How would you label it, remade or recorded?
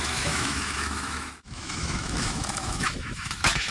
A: remade